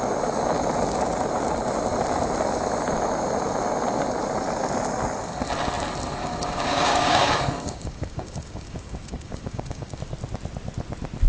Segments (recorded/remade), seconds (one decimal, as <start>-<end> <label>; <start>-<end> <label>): 0.0-6.2 recorded; 6.2-10.0 remade; 10.0-11.3 recorded